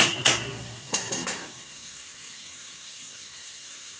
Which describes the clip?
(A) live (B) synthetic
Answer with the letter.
B